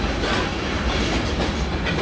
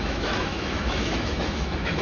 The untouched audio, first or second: first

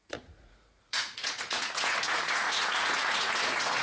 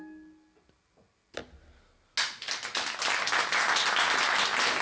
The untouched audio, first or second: second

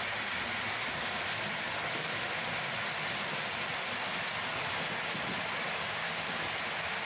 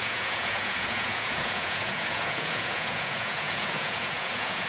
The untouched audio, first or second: first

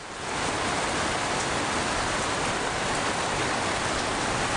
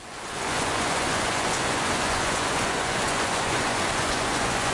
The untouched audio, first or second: first